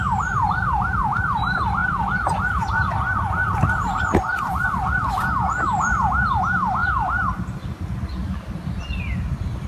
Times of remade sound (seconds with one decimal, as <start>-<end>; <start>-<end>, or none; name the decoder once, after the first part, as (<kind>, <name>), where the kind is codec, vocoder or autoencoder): none